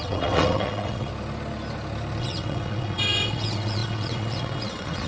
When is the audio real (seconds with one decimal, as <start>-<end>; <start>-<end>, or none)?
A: 1.1-2.2